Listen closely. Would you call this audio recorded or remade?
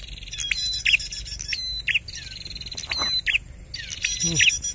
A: recorded